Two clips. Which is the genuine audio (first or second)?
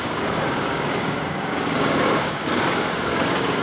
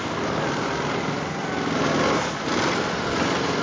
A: second